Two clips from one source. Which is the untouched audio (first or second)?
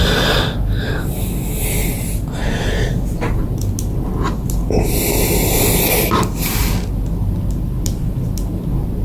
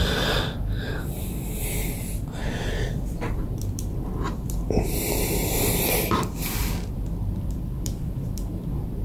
first